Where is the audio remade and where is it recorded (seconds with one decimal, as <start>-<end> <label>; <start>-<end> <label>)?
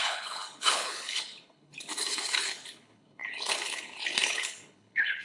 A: 0.0-5.2 remade